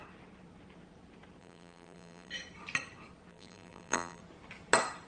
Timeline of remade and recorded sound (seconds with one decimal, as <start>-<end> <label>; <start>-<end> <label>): 0.0-1.4 recorded; 1.4-2.3 remade; 2.3-3.3 recorded; 3.3-4.2 remade; 4.2-5.1 recorded